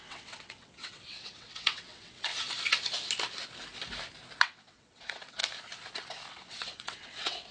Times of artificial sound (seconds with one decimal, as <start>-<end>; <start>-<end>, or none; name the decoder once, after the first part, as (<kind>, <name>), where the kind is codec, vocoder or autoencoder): 0.0-2.3 (vocoder, WaveNeXt); 4.4-5.4; 6.3-7.5